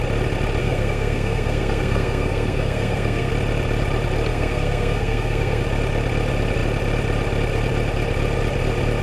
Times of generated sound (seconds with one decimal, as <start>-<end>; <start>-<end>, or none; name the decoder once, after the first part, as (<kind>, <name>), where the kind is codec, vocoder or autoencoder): 0.6-3.3 (codec, SNAC); 4.3-5.6